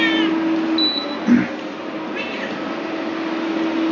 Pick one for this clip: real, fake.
real